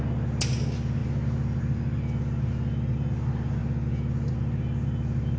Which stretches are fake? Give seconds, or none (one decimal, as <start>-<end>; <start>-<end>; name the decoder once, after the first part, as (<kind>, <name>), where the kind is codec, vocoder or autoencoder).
none